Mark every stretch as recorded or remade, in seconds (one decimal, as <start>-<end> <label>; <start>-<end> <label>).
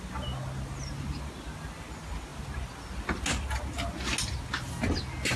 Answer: 0.0-5.4 recorded